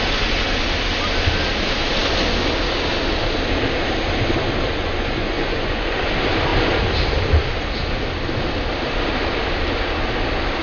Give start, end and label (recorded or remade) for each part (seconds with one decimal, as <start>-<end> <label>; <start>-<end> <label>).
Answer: 0.0-4.8 recorded; 4.8-6.0 remade; 6.0-10.6 recorded